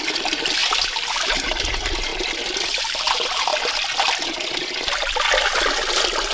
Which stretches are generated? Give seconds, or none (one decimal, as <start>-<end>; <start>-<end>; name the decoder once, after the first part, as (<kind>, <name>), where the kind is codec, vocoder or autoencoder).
0.0-2.1 (vocoder, BigVGAN v2); 2.8-3.5